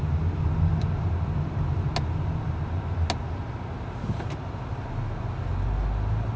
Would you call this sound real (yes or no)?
yes